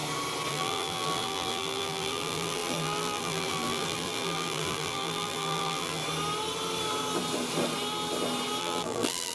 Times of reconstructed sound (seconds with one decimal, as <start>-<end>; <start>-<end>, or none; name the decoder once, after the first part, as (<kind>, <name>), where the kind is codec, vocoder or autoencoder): 0.5-6.0 (vocoder, BigVGAN v2); 8.6-9.3